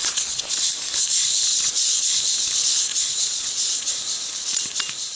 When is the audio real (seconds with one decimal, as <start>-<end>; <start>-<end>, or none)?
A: 0.6-1.5; 2.0-2.9; 3.9-5.2